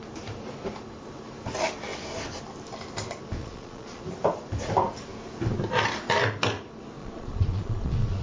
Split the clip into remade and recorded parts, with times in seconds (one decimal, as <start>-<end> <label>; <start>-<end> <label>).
0.0-3.4 recorded; 3.4-4.0 remade; 4.0-7.0 recorded; 7.0-8.2 remade